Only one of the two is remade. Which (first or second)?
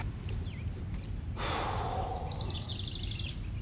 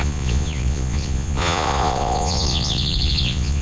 second